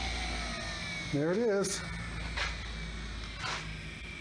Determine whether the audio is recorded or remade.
recorded